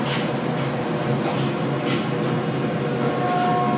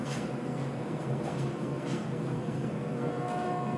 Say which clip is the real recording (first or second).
first